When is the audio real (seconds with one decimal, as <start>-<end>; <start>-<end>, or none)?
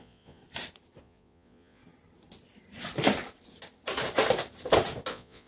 0.4-1.0; 1.8-5.1